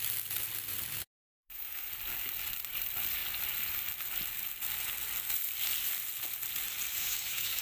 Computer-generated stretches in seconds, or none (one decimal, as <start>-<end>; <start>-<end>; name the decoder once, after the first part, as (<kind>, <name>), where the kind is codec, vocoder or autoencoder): 1.4-1.9 (autoencoder, DAC-VAE); 6.9-7.6